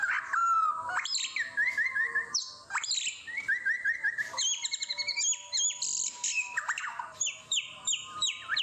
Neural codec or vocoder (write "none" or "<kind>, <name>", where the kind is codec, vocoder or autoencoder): none